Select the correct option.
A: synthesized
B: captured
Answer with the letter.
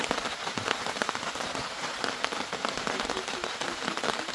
B